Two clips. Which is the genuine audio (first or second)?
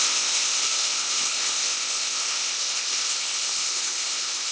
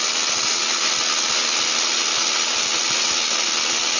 second